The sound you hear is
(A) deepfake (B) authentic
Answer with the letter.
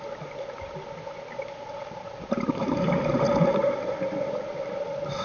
B